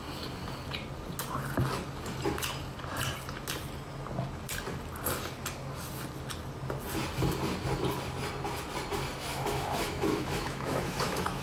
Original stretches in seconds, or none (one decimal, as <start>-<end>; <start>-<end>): 0.0-9.3

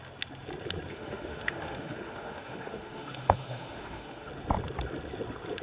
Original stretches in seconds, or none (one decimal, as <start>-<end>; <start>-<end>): 0.0-0.9; 4.3-5.6